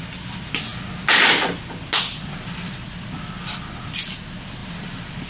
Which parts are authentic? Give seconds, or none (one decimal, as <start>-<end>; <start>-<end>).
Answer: 0.0-5.3